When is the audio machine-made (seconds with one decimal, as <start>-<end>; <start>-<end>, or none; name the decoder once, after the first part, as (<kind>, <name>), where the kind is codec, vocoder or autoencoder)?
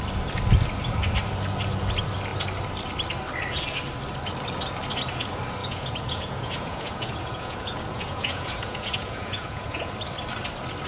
5.6-9.9 (vocoder, Vocos)